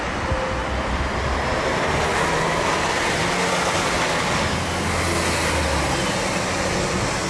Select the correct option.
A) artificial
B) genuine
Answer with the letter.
B